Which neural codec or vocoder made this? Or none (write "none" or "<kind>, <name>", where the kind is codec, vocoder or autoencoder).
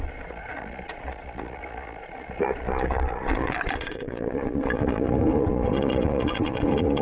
vocoder, Vocos